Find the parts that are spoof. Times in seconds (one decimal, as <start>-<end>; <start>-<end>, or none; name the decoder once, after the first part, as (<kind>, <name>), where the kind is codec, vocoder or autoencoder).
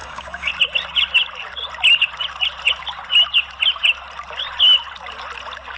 0.0-0.5 (codec, DAC)